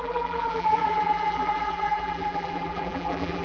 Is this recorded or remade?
remade